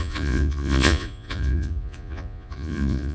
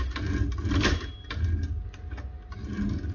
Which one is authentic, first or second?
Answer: second